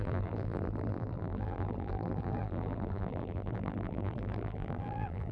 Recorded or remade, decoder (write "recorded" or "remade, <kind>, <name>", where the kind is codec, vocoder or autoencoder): remade, vocoder, BigVGAN v2